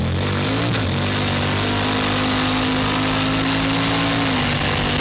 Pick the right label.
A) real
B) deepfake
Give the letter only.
A